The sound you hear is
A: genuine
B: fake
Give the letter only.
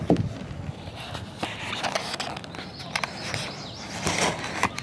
A